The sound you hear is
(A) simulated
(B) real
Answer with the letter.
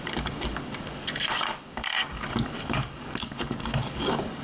A